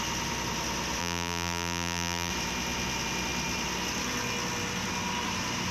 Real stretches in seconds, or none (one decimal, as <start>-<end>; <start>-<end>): 0.0-1.0; 2.3-5.7